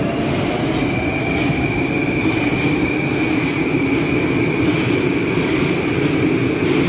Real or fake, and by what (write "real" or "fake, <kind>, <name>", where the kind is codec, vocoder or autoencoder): real